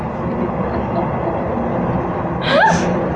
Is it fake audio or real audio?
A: real